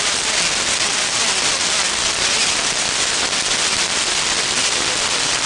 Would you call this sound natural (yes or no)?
yes